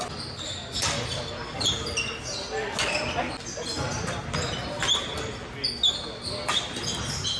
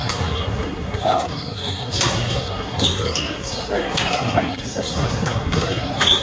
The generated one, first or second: second